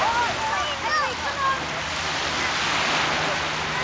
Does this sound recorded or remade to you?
recorded